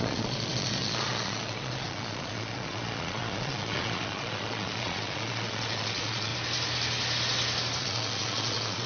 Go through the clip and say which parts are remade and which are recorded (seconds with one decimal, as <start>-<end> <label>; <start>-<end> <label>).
0.0-6.3 remade; 6.3-7.8 recorded; 7.8-8.9 remade